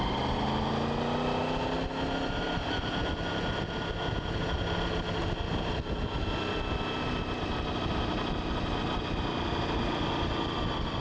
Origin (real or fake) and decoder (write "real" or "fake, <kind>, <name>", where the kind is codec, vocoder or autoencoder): real